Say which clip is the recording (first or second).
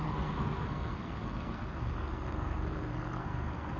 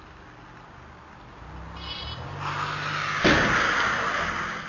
second